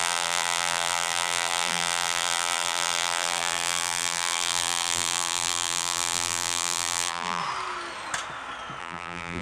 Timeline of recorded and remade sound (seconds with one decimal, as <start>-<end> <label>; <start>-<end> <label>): 0.0-7.4 remade; 7.4-8.8 recorded; 8.8-9.4 remade